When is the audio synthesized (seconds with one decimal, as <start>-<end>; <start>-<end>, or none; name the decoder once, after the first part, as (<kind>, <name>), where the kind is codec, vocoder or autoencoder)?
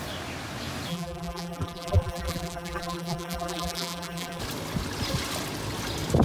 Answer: 0.9-4.4 (vocoder, BigVGAN v2)